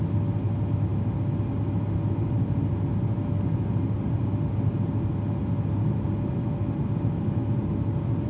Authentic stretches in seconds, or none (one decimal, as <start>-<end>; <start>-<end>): 0.0-8.3